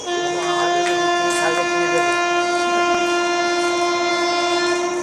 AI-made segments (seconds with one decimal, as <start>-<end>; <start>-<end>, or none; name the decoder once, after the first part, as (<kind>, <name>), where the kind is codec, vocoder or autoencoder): none